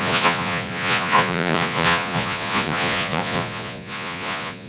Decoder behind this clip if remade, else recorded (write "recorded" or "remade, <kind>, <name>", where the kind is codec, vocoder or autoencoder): remade, vocoder, Vocos